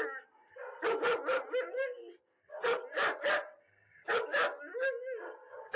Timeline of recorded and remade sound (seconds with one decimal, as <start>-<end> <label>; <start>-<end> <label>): 0.0-5.8 recorded